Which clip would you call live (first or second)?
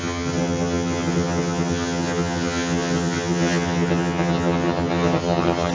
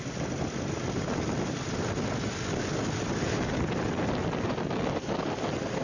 second